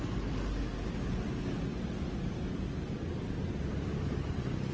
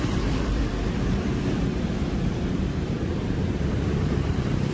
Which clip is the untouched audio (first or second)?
first